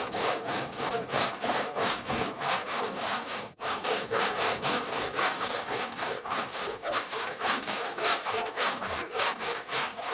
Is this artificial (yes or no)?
yes